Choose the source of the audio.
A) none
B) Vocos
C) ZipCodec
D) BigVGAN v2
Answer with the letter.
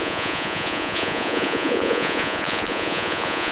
B